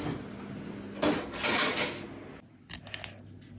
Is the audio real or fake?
real